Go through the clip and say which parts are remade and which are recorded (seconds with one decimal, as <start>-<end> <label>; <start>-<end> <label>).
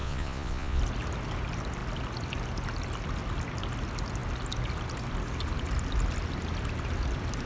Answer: 0.0-0.8 remade; 0.8-7.5 recorded